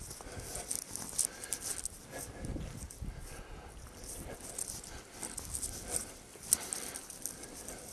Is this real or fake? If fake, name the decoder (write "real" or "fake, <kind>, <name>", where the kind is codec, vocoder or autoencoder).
real